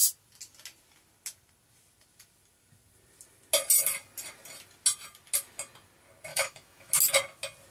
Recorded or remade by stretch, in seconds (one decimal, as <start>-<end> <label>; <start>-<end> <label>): 0.0-6.3 recorded; 6.3-6.9 remade; 6.9-7.7 recorded